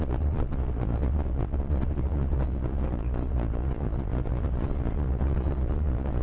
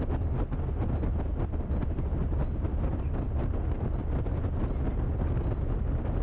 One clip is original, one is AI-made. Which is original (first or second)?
second